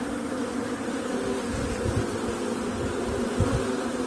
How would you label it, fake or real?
real